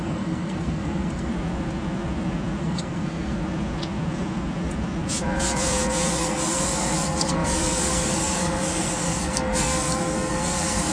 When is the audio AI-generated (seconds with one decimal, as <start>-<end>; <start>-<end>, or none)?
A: 0.0-1.3; 2.6-3.4; 6.1-10.9